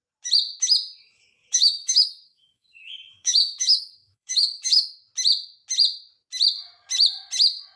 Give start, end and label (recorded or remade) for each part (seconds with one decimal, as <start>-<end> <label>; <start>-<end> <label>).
0.0-1.0 recorded; 1.0-5.0 remade; 5.0-7.8 recorded